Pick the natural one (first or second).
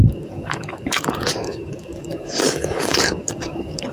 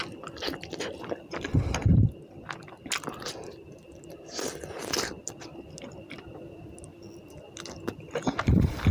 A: second